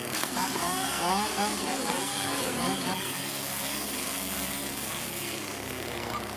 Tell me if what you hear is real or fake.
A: fake